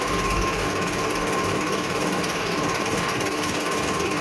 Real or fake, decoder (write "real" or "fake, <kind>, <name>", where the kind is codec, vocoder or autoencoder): fake, codec, DAC